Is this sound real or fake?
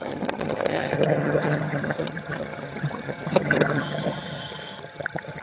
fake